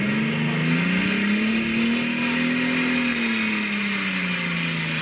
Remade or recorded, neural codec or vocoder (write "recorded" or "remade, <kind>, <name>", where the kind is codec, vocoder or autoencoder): recorded